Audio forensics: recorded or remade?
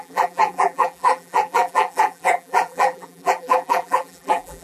remade